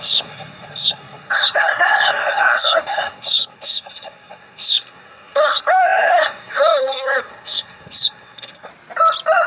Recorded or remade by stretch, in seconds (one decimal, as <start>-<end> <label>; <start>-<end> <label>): 0.0-8.7 remade; 8.7-9.5 recorded